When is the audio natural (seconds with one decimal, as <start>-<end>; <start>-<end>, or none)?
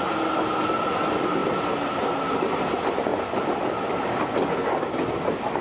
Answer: 0.0-5.6